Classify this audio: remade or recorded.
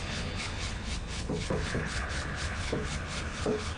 remade